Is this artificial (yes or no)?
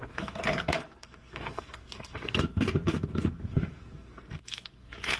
yes